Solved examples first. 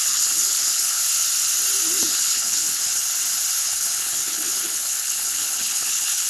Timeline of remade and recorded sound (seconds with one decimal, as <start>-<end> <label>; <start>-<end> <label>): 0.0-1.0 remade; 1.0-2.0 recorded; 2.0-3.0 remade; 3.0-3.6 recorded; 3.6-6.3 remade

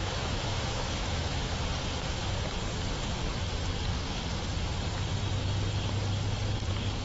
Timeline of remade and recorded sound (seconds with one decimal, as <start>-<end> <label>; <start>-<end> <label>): 0.0-1.4 remade; 1.4-7.0 recorded

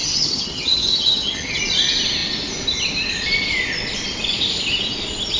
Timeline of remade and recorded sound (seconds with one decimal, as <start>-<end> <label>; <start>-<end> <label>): 0.0-1.6 remade; 1.6-5.4 recorded

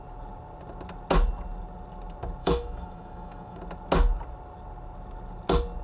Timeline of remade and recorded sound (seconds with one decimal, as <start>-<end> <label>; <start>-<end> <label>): 0.0-2.4 recorded; 2.4-3.6 remade; 3.6-5.8 recorded